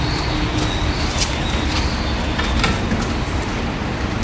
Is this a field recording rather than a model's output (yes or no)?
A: yes